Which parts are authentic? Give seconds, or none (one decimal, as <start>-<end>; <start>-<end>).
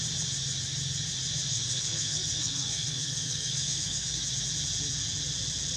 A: 0.0-1.5; 4.2-5.8